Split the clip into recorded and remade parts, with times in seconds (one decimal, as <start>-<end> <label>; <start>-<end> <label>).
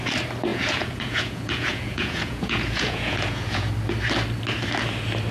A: 0.0-0.5 recorded; 0.5-3.7 remade; 3.7-5.3 recorded